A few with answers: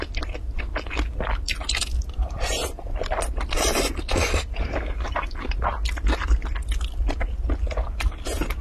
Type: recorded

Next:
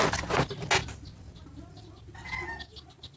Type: recorded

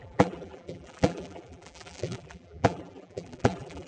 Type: remade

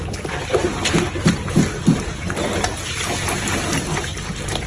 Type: recorded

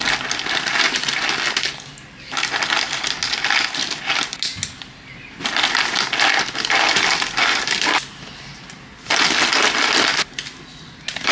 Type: recorded